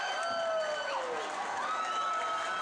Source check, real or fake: real